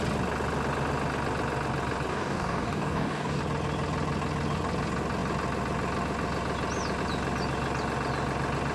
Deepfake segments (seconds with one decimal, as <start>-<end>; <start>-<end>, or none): 2.1-3.4